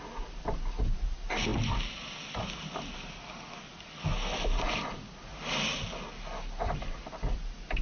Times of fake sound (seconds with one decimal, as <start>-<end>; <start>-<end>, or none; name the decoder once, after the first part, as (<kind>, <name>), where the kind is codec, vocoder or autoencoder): none